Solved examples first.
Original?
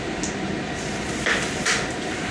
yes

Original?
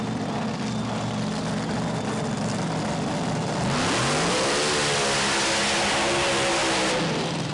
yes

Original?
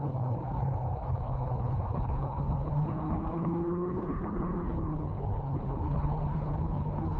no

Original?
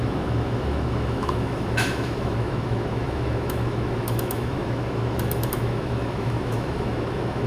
no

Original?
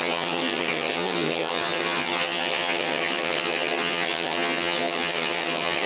no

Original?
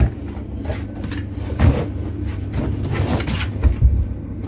yes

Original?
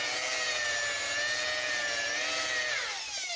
yes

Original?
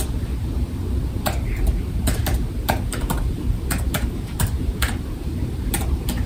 no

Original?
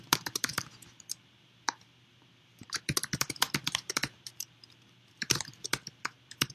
no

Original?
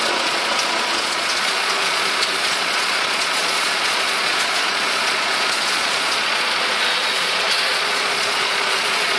no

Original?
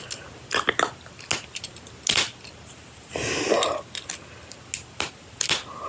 yes